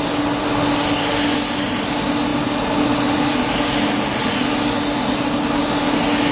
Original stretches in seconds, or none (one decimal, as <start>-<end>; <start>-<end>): 0.0-6.3